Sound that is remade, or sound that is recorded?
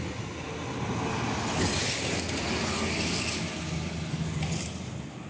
recorded